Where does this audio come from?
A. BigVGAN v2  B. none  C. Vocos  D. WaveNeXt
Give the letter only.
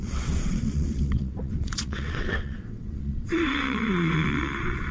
D